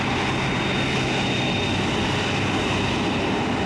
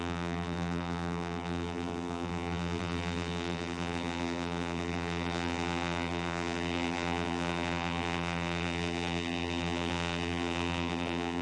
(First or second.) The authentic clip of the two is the first